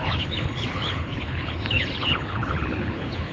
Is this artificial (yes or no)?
yes